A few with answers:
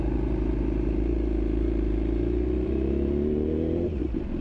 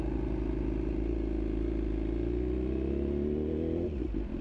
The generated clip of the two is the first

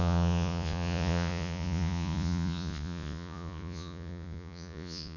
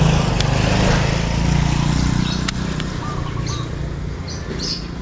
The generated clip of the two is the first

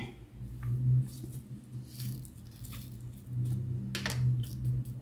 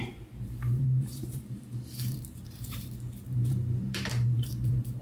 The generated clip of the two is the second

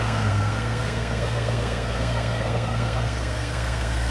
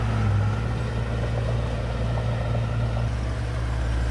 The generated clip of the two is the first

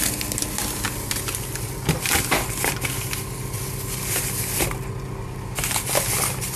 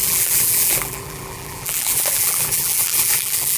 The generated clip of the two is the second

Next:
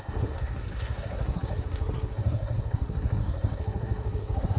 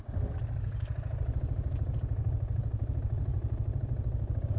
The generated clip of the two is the first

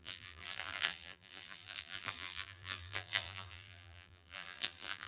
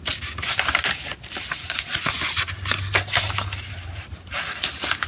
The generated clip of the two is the first